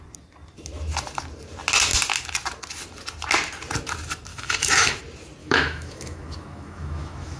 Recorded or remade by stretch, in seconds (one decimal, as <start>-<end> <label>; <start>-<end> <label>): 0.0-4.3 recorded; 4.3-5.0 remade; 5.0-5.4 recorded; 5.4-7.4 remade